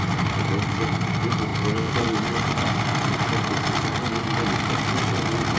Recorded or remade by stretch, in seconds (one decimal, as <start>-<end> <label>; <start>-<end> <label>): 0.0-5.6 recorded